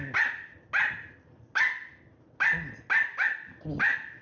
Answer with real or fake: real